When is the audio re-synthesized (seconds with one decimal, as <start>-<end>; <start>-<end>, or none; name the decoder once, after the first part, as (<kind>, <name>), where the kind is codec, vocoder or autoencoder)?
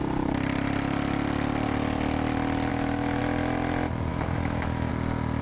2.7-3.2 (autoencoder, DAC-VAE); 4.1-4.9